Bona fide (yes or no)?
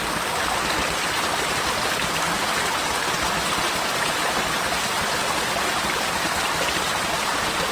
yes